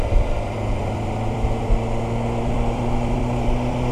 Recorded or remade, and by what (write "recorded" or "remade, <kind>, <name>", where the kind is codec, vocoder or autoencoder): remade, vocoder, BigVGAN v2